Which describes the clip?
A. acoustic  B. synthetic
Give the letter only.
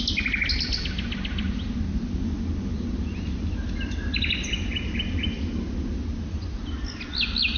A